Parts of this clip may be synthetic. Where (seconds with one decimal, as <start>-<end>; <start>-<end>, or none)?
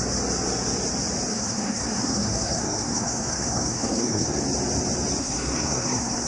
1.3-4.4; 5.2-6.3